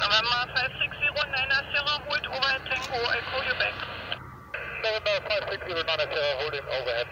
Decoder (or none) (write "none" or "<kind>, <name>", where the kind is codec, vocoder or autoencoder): none